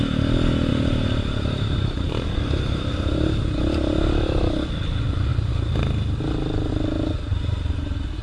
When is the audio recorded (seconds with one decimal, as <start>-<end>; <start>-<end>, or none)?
0.0-0.7; 4.5-7.3